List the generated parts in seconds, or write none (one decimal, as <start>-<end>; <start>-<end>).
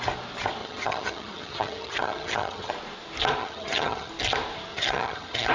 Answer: 0.6-2.7; 3.4-4.1; 4.7-5.5